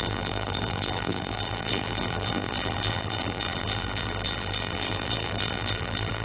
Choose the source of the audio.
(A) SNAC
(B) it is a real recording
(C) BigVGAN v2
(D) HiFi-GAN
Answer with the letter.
C